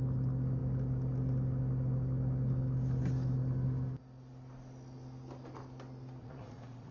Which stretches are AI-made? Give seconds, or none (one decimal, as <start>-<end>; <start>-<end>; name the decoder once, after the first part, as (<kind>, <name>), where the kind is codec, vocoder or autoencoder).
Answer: 6.2-6.9 (vocoder, Vocos)